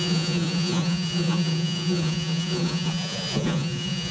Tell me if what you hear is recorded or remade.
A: remade